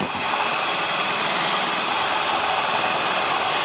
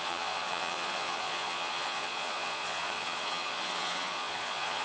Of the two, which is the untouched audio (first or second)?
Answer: first